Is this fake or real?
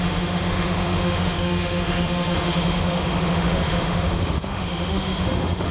fake